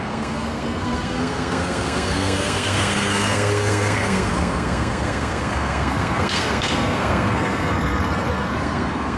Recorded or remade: remade